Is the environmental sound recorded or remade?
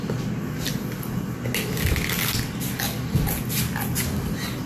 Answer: recorded